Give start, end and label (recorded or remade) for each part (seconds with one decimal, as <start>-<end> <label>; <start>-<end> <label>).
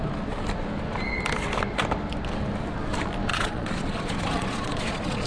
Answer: 0.0-3.3 recorded; 3.3-5.3 remade